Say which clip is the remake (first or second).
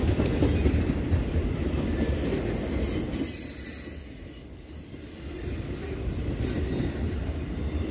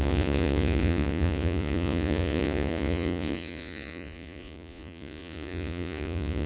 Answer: second